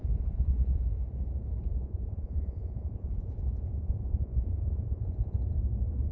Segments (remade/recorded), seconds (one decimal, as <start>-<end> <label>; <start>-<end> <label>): 0.0-0.8 remade; 0.8-1.7 recorded; 1.7-5.4 remade; 5.4-6.1 recorded